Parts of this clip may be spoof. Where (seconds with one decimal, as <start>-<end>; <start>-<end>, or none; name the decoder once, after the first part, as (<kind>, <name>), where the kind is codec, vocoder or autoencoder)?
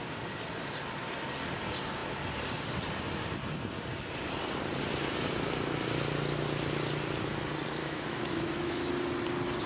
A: 7.8-8.9 (autoencoder, DAC-VAE)